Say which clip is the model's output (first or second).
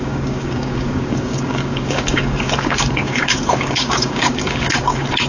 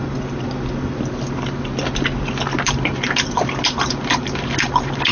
first